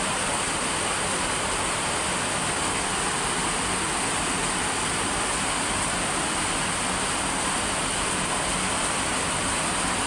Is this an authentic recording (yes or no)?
yes